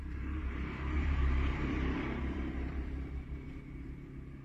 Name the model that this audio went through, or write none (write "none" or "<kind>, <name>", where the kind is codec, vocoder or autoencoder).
vocoder, BigVGAN v2